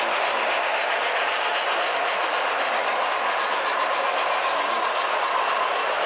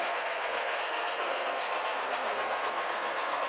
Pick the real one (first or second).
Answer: first